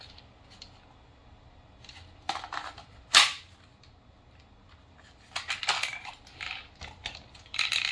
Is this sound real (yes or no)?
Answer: yes